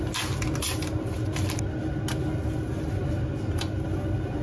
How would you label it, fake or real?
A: real